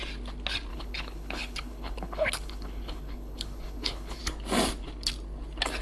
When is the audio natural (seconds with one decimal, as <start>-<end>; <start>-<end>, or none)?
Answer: 0.0-0.7; 4.2-5.8